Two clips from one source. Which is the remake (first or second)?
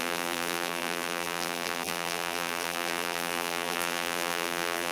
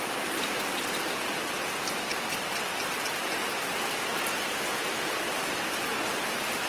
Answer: first